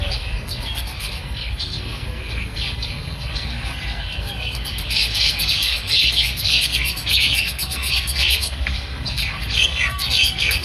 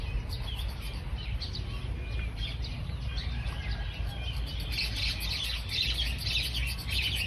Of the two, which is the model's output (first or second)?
first